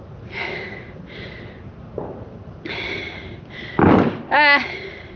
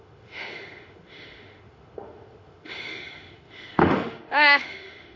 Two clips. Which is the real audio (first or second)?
first